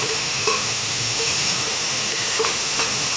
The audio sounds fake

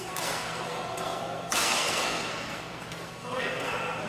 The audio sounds fake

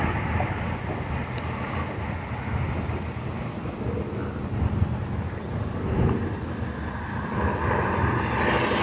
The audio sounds real